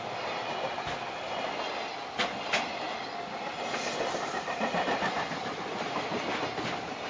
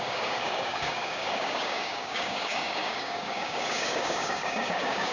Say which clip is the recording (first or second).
first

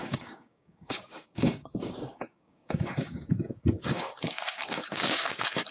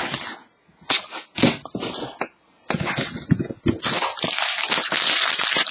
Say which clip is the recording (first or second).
second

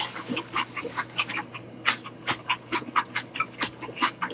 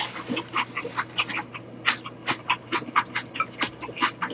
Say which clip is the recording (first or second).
second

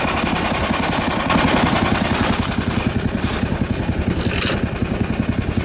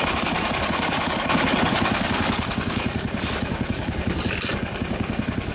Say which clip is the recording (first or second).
first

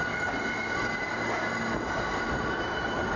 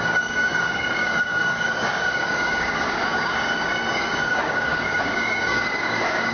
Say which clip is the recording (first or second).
first